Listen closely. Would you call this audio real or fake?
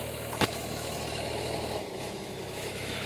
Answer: fake